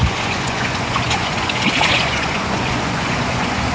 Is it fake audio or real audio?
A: fake